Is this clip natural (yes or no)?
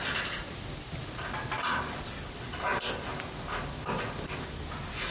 yes